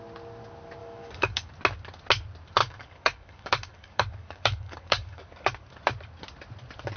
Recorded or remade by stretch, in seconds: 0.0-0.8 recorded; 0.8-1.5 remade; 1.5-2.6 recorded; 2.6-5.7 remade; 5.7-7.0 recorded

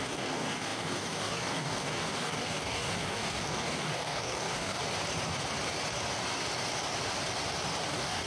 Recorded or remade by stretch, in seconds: 0.0-4.8 remade; 4.8-7.9 recorded; 7.9-8.3 remade

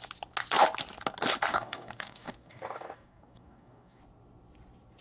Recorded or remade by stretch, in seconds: 0.0-1.5 recorded; 1.5-4.0 remade; 4.0-5.0 recorded

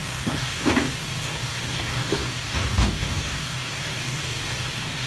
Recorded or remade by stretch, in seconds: 0.0-5.1 remade

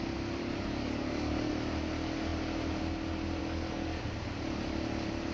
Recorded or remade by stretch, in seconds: 0.0-0.4 recorded; 0.4-1.5 remade; 1.5-3.4 recorded; 3.4-4.0 remade; 4.0-5.3 recorded